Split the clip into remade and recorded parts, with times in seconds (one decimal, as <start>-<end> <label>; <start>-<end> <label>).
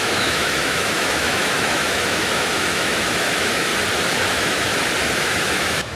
0.0-3.7 remade; 3.7-4.3 recorded; 4.3-4.7 remade; 4.7-5.2 recorded; 5.2-6.0 remade